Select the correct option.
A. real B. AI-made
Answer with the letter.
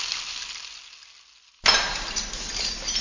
A